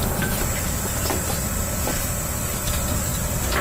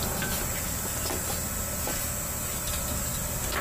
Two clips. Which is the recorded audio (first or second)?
second